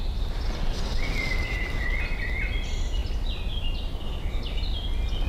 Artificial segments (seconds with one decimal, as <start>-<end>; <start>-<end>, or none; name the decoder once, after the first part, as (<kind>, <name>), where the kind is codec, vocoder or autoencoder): none

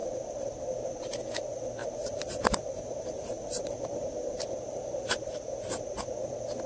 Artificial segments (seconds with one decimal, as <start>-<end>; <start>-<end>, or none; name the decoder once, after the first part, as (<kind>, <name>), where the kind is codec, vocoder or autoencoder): 0.0-0.6 (vocoder, BigVGAN v2); 1.8-5.6

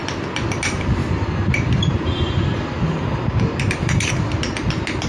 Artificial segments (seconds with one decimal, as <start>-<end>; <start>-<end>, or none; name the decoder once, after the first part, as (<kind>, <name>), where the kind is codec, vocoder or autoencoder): none